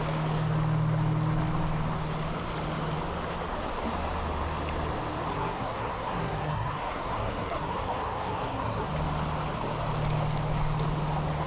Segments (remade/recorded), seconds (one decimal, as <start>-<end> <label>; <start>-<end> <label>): 0.0-5.3 recorded; 5.3-8.9 remade; 8.9-11.5 recorded